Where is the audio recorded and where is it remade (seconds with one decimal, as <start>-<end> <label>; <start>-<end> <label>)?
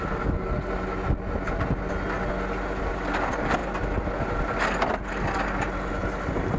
0.0-6.6 recorded